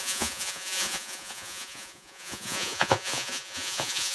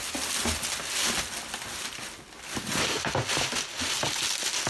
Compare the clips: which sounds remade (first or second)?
first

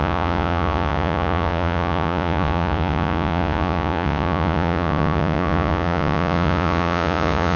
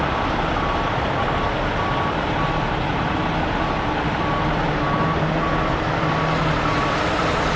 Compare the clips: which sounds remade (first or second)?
first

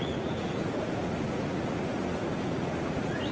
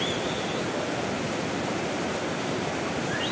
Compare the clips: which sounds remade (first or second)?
first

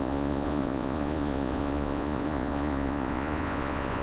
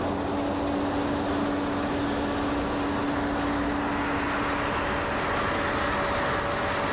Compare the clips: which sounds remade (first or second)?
first